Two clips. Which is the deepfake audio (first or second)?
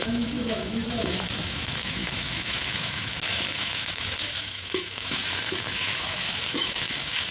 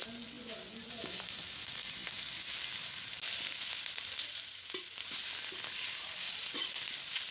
first